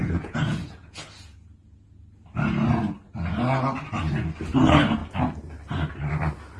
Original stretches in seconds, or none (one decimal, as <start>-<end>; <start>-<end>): 2.0-6.6